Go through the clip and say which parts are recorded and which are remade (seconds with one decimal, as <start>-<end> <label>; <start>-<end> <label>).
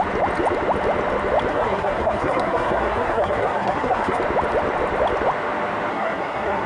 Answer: 0.0-1.5 recorded; 1.5-4.2 remade; 4.2-5.9 recorded; 5.9-6.7 remade